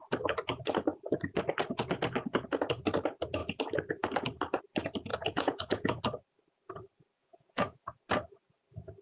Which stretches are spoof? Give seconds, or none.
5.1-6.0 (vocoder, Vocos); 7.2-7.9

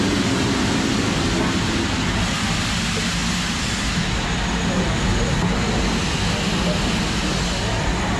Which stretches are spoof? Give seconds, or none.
none

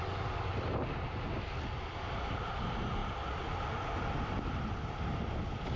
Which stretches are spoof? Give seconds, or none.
none

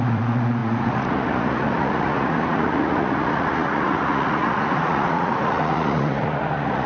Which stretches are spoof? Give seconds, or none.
0.0-6.9 (vocoder, Vocos)